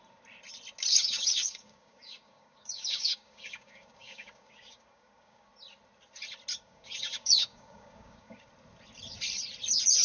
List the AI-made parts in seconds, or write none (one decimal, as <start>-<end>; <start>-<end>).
0.9-5.5; 6.5-8.5